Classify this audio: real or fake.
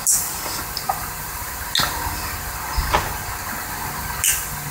real